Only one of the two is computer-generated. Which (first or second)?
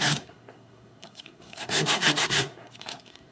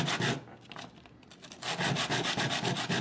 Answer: first